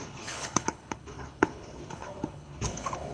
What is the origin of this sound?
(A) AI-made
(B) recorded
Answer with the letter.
A